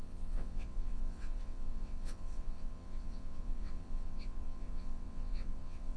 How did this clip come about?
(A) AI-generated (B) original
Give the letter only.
A